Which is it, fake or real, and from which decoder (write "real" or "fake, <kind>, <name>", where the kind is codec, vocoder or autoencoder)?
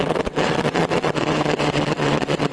fake, vocoder, WaveNeXt